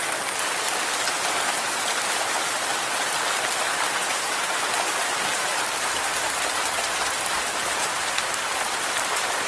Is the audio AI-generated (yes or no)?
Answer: no